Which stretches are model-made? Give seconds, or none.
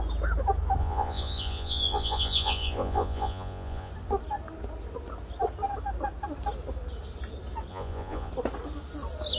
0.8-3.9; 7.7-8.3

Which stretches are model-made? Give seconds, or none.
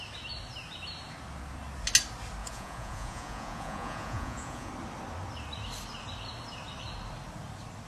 2.4-4.7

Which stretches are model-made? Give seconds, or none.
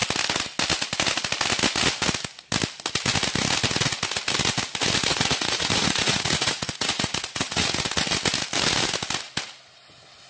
5.1-7.9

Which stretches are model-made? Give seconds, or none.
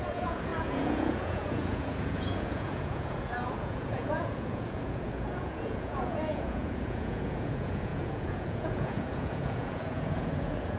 0.0-10.8